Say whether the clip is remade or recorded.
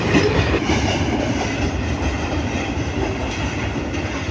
recorded